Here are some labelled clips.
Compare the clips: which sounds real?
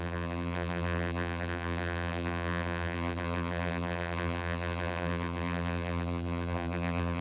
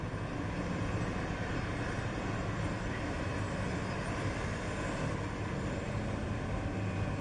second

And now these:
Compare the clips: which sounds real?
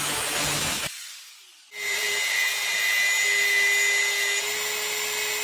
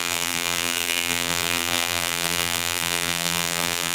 first